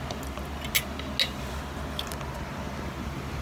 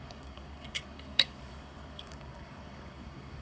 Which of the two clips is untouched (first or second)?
first